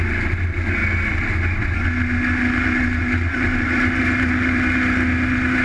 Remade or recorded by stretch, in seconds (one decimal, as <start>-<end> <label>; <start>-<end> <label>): 0.0-5.6 recorded